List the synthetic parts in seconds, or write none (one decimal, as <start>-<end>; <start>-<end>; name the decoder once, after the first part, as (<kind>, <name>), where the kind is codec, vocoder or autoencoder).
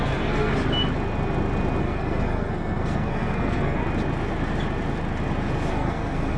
0.0-0.5 (codec, SNAC); 1.8-3.8; 5.7-6.4